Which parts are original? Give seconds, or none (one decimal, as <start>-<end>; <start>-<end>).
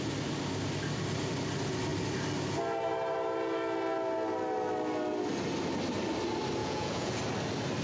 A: 0.0-6.6; 7.2-7.8